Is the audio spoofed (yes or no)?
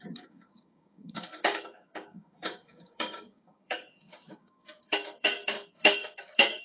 yes